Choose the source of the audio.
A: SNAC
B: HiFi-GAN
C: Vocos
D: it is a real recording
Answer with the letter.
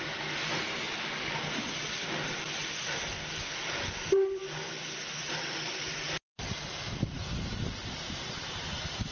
D